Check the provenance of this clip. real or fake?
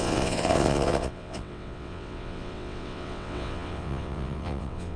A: fake